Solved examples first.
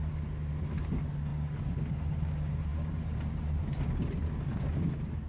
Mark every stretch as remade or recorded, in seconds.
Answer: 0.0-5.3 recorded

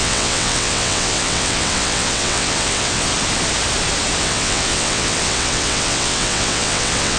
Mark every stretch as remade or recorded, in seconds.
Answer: 0.0-3.1 remade; 3.1-4.2 recorded; 4.2-7.2 remade

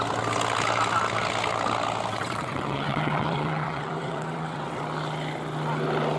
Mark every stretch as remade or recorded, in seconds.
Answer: 0.0-2.1 recorded; 2.1-4.8 remade; 4.8-6.2 recorded

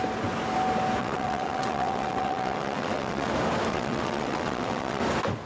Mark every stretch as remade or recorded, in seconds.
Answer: 0.0-1.0 recorded; 1.0-3.3 remade; 3.3-3.7 recorded; 3.7-5.0 remade; 5.0-5.5 recorded